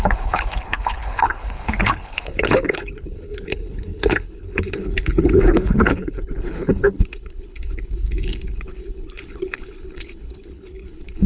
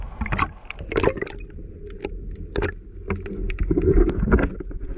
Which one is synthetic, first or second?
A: first